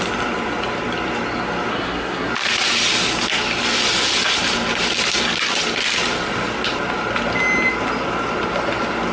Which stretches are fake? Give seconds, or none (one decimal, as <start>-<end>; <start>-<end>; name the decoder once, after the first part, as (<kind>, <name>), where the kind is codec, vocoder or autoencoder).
1.7-2.3 (codec, SNAC)